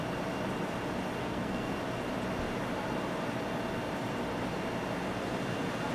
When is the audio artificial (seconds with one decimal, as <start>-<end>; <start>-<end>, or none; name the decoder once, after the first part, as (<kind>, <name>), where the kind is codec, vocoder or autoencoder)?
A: 1.2-1.7 (codec, SNAC)